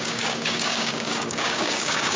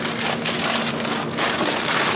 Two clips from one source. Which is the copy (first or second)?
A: first